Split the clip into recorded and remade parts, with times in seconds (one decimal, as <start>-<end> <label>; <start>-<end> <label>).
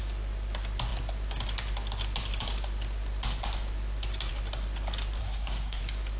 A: 0.0-5.2 recorded; 5.2-5.8 remade; 5.8-6.2 recorded